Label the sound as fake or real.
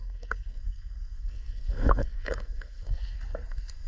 fake